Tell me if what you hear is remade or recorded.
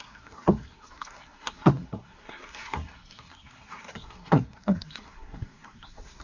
remade